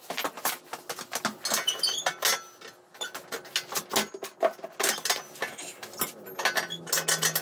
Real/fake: real